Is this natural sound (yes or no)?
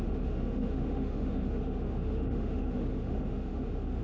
no